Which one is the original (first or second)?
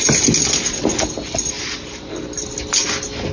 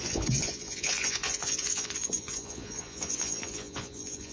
first